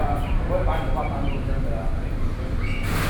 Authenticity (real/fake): real